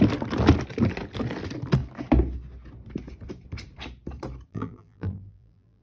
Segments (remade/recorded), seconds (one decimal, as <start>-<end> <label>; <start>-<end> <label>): 0.0-4.5 recorded; 4.5-5.8 remade